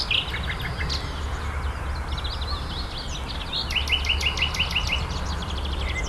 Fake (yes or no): no